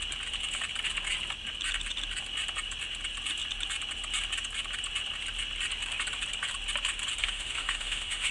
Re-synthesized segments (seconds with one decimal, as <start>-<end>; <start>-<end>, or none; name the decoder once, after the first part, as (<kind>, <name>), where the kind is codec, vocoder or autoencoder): 7.2-8.3 (autoencoder, DAC-VAE)